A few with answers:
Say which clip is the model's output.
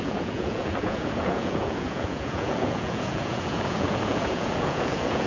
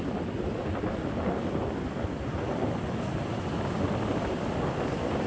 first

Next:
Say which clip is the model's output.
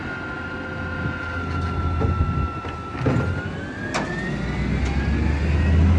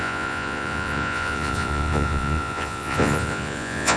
second